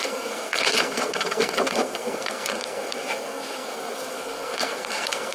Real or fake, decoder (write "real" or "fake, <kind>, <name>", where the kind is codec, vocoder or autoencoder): fake, codec, SNAC